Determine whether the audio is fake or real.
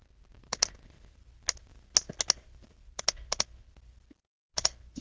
real